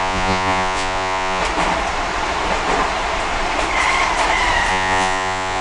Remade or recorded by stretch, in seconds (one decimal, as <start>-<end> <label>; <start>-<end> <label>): 0.0-1.4 remade; 1.4-4.7 recorded; 4.7-5.6 remade